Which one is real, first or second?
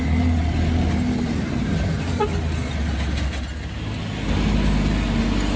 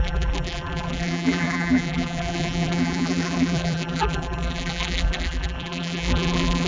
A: first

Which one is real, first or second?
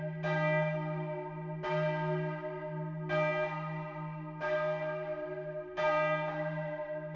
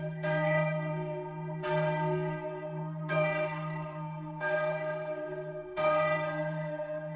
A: first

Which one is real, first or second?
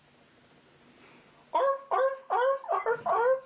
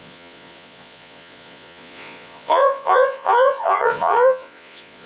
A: first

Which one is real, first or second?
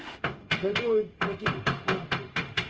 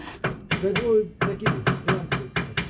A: second